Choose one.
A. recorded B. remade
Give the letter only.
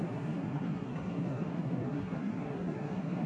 B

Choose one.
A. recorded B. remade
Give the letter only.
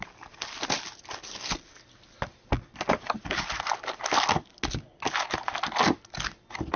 A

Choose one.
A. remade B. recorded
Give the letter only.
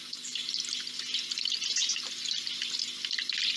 B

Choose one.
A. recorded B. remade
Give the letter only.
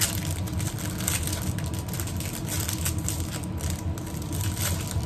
A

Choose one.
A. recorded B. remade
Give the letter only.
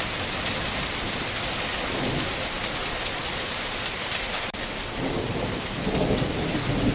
A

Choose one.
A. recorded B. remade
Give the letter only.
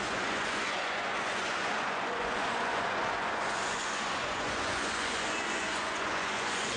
B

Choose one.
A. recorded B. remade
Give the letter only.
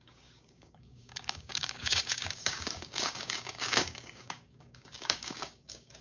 B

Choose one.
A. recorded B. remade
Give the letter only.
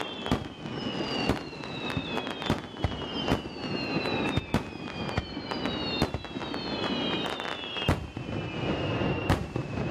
A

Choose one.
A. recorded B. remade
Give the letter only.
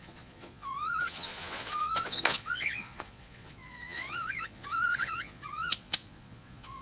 B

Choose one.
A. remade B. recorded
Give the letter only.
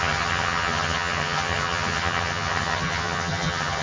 A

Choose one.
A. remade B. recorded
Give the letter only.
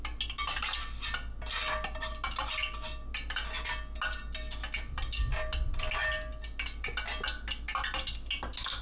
B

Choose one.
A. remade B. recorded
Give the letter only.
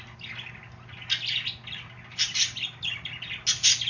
B